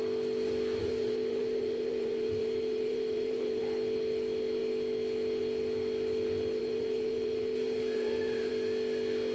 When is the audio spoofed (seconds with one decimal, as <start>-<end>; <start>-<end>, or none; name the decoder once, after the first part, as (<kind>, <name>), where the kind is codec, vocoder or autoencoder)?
0.8-3.6 (vocoder, BigVGAN v2); 6.6-8.5